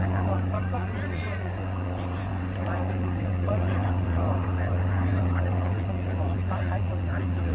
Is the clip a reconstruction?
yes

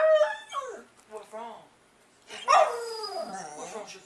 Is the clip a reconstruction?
no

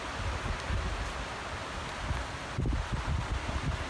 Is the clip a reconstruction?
no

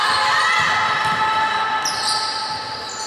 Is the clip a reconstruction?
no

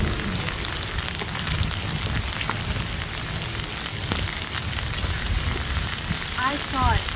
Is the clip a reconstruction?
no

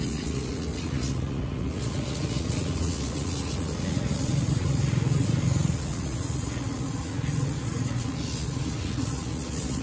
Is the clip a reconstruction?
yes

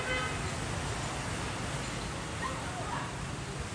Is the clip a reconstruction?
no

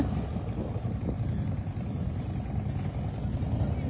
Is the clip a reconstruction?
no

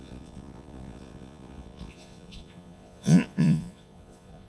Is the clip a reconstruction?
yes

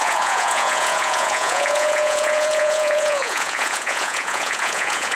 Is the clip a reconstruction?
yes